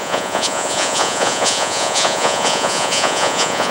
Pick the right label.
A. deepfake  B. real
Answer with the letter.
A